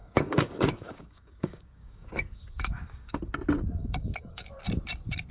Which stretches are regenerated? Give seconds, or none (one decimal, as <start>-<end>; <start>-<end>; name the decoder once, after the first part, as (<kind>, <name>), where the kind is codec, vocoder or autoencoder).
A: 0.0-3.2 (codec, DAC); 3.8-4.5